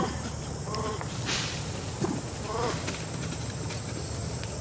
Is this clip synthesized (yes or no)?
no